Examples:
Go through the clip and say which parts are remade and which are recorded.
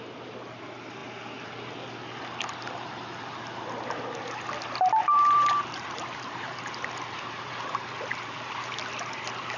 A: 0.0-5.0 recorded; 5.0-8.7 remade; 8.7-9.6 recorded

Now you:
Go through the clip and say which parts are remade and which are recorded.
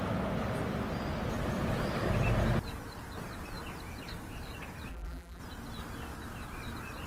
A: 0.0-4.9 recorded; 4.9-5.4 remade; 5.4-7.1 recorded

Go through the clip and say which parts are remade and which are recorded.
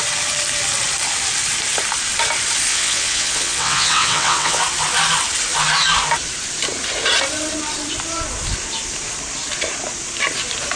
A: 0.0-2.7 recorded; 2.7-4.6 remade; 4.6-10.7 recorded